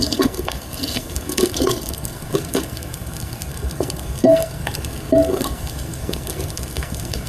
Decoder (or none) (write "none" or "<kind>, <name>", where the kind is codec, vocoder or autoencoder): codec, SNAC